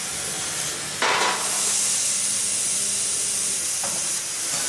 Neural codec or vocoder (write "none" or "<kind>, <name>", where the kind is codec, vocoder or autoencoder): none